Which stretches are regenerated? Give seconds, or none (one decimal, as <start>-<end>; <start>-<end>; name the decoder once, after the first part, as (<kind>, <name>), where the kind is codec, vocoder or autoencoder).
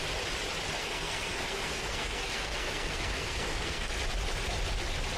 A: 0.8-3.9 (codec, SNAC)